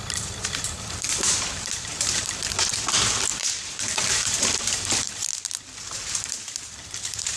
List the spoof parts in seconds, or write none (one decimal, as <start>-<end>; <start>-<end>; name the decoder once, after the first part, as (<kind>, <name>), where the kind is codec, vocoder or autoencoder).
0.0-5.3 (vocoder, BigVGAN v2); 5.9-7.4